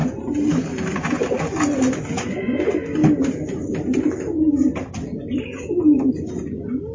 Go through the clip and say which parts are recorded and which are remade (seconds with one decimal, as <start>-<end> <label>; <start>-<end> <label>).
0.0-6.9 recorded